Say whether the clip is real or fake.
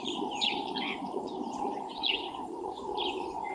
fake